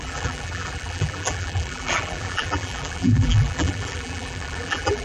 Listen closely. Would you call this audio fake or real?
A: fake